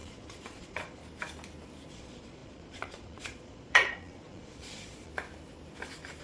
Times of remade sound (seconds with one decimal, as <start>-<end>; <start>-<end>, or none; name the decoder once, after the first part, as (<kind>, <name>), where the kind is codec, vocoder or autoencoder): 0.0-1.0 (vocoder, Vocos); 1.9-5.1